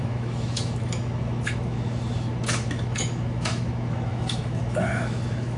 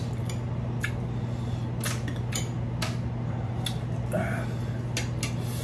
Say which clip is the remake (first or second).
first